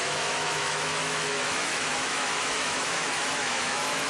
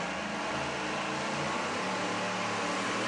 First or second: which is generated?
first